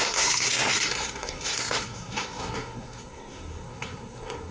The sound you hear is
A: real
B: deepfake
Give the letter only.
B